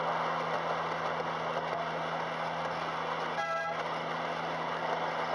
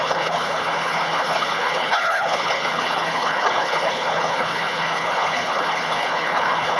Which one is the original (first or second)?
first